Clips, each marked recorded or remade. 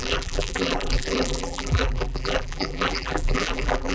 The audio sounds remade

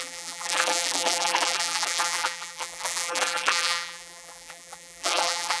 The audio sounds remade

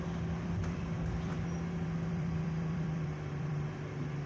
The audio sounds remade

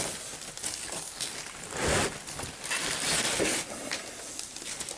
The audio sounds recorded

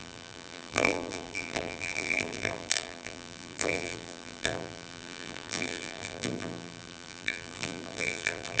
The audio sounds remade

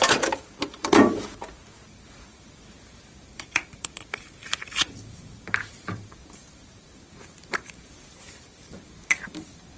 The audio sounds remade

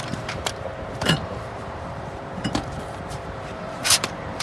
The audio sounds remade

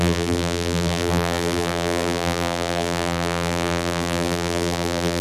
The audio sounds remade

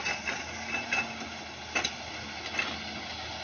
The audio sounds recorded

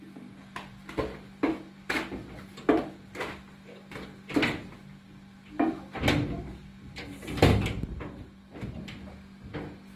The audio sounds recorded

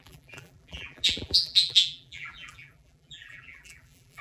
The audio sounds remade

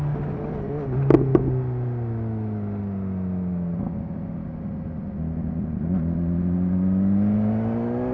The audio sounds recorded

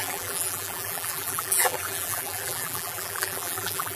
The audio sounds remade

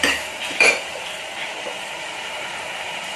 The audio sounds remade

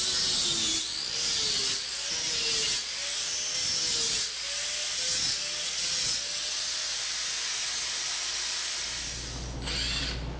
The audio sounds recorded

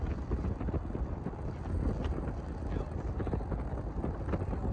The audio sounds recorded